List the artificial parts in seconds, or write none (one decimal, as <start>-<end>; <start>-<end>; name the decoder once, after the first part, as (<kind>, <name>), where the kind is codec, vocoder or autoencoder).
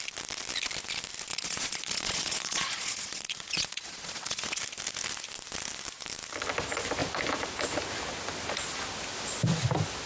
1.3-4.6 (vocoder, Vocos)